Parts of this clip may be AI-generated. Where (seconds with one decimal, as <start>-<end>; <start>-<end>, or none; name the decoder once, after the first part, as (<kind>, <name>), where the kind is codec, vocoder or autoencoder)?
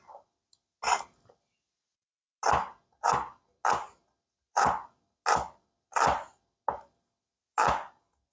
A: none